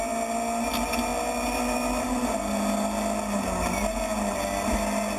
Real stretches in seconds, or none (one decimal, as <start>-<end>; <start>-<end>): 0.0-5.2

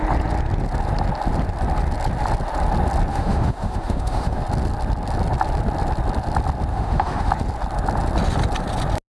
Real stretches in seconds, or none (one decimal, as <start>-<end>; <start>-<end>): 0.0-3.1; 4.4-6.7; 7.3-9.2

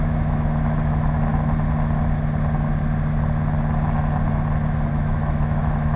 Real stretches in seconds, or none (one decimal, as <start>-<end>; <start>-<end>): 1.3-4.9

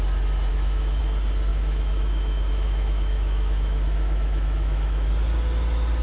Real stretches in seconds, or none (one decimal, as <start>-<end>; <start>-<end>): 0.0-0.5; 1.0-1.5; 5.1-6.0

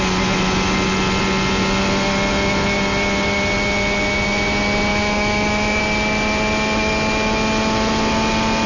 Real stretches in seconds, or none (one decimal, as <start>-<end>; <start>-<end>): 0.0-4.9; 5.8-8.7

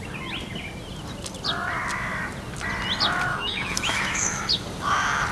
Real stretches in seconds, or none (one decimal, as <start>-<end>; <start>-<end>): 0.0-3.3; 4.4-5.3